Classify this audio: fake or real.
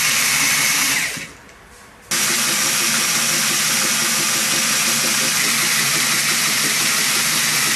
real